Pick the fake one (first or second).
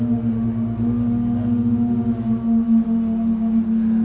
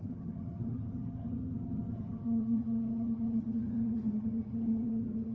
second